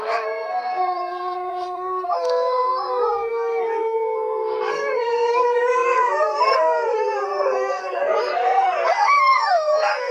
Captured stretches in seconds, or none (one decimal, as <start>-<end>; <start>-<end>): none